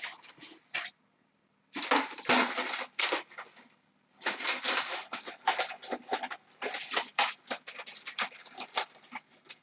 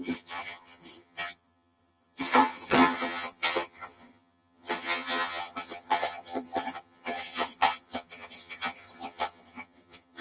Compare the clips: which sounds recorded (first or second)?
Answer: first